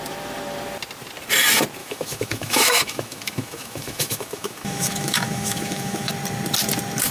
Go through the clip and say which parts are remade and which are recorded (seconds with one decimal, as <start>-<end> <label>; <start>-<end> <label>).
0.0-1.8 recorded; 1.8-6.1 remade; 6.1-7.1 recorded